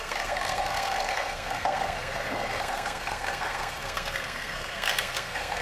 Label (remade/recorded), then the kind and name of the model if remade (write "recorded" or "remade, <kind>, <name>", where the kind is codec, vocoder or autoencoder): remade, codec, SNAC